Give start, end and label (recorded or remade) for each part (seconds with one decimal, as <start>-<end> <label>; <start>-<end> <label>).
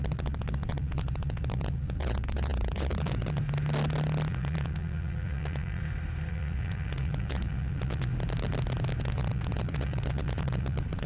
0.0-3.4 remade; 3.4-4.3 recorded; 4.3-5.8 remade; 5.8-6.3 recorded; 6.3-8.1 remade; 8.1-9.0 recorded; 9.0-11.1 remade